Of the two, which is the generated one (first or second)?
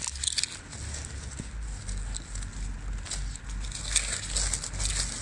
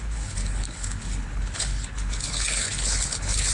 second